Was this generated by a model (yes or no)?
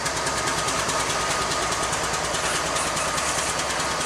no